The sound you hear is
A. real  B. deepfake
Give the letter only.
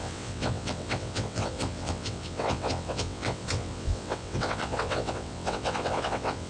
B